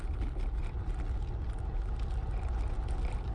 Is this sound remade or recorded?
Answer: recorded